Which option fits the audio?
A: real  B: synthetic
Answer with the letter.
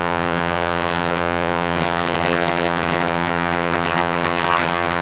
B